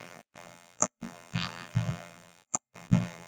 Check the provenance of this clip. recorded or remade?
remade